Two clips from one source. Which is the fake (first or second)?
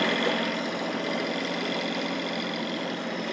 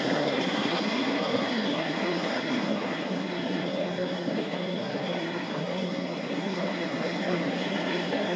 second